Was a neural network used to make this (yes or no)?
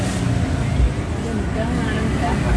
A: no